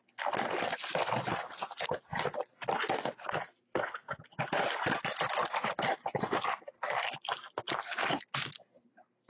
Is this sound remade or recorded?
recorded